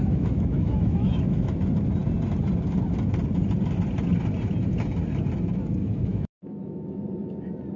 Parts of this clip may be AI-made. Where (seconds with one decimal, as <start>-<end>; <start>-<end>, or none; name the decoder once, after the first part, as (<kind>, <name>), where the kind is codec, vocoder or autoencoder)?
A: 0.0-1.5 (autoencoder, DAC-VAE); 5.8-7.0